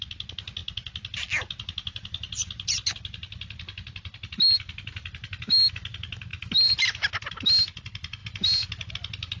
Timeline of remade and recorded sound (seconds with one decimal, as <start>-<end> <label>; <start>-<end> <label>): 0.0-9.4 recorded